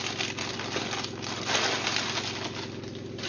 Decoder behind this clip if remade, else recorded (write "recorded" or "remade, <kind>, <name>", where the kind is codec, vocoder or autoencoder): recorded